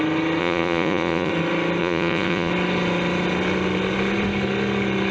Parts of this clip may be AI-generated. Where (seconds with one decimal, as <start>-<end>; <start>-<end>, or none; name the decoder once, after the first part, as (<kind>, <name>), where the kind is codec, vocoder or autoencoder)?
0.4-1.3 (vocoder, Vocos); 1.8-2.5